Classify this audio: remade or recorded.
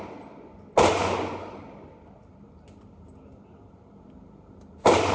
recorded